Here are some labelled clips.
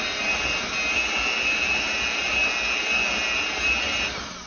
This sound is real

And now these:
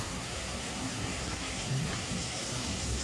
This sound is fake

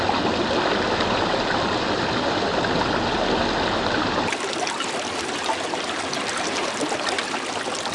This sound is real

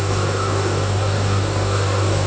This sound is fake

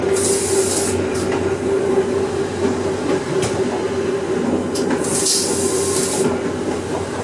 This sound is real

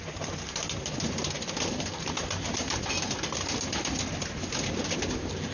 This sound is real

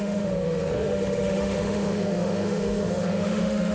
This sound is fake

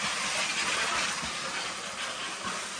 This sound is real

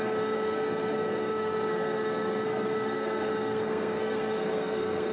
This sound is fake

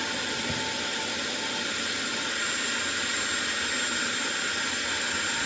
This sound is real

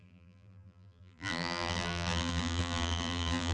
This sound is fake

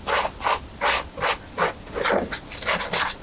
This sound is real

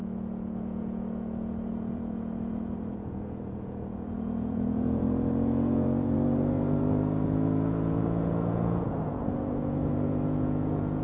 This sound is fake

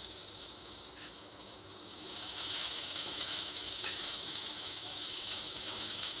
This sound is fake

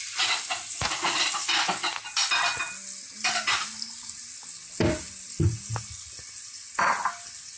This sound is real